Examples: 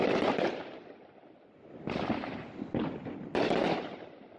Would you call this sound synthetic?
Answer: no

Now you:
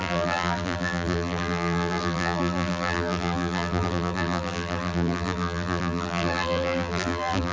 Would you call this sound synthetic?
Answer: yes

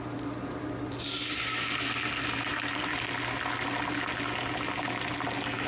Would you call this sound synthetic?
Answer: no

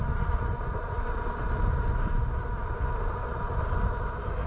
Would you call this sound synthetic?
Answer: no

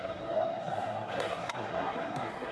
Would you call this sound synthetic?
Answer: yes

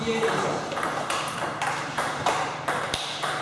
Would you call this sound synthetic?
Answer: yes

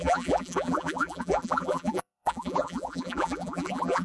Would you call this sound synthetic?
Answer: yes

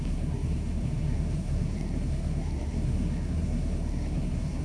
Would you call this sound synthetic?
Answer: yes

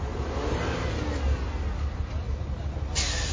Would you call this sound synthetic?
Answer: no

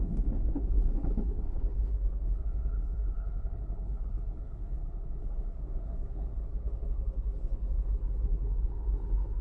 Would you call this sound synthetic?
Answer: yes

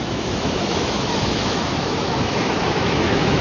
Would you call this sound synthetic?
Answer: yes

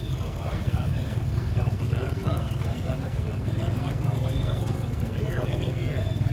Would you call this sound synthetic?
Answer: yes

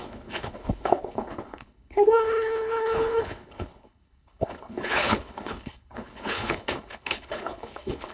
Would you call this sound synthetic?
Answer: yes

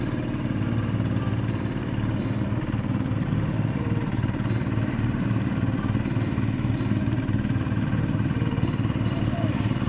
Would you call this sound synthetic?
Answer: yes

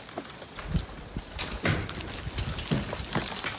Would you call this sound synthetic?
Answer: no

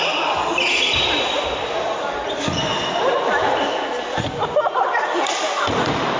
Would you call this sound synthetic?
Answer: no